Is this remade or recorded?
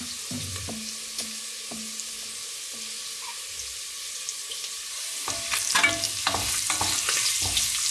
recorded